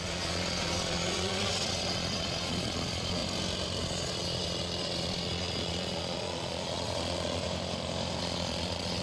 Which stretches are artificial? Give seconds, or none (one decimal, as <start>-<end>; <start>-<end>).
0.0-3.2; 3.8-7.4; 8.2-9.0

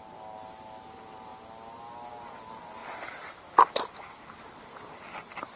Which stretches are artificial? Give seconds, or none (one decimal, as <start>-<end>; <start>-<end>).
2.8-3.4